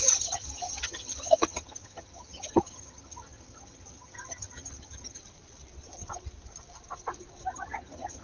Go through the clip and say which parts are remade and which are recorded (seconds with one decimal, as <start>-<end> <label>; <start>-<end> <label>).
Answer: 0.0-5.2 remade; 5.2-7.5 recorded; 7.5-8.2 remade